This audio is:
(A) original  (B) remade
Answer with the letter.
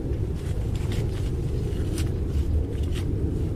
A